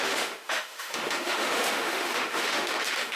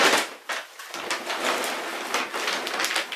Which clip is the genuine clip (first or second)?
second